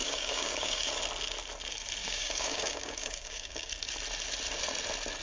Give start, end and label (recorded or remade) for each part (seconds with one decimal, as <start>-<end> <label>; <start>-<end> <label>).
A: 0.0-1.0 remade; 1.0-2.0 recorded; 2.0-3.7 remade; 3.7-5.2 recorded